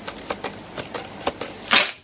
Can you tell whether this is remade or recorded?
recorded